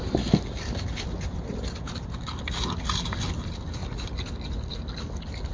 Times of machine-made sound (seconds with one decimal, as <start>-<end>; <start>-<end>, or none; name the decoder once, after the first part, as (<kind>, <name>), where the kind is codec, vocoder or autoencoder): none